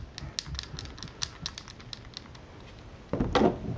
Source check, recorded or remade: recorded